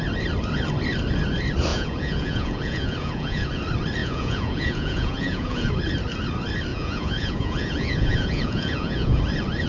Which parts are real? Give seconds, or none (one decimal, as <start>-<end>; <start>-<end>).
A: 0.0-1.7; 3.6-4.0; 5.7-6.7; 9.2-9.7

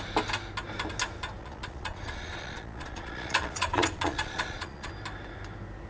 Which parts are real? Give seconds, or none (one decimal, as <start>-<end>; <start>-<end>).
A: 0.0-1.4; 4.9-5.9